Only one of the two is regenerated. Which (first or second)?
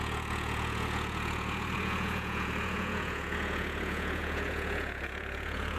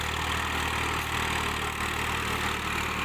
first